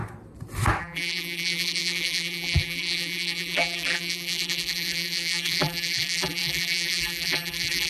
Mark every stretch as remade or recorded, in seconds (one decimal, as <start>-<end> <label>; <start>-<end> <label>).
0.0-0.8 recorded; 0.8-7.9 remade